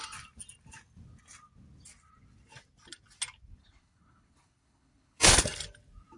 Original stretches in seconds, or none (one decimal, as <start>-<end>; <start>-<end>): 0.0-3.6; 5.3-6.2